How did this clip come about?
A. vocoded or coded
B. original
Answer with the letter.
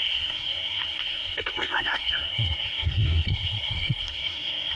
A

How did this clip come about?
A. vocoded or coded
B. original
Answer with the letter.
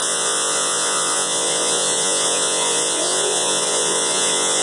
A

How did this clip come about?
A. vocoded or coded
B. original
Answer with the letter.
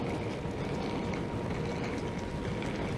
B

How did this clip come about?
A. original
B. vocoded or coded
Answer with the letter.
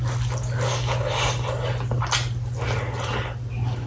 A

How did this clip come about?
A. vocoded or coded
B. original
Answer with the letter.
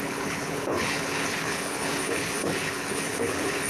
A